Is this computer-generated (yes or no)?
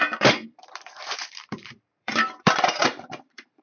yes